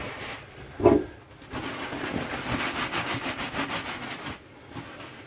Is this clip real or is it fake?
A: real